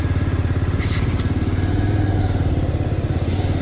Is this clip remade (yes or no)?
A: no